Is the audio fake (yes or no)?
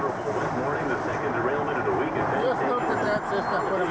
no